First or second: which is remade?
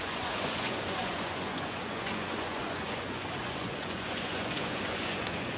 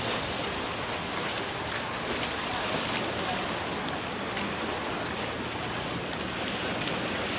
first